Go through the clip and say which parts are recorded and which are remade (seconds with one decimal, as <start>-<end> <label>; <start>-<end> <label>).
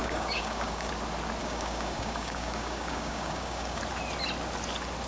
0.0-0.9 remade; 0.9-1.4 recorded; 1.4-3.8 remade; 3.8-5.1 recorded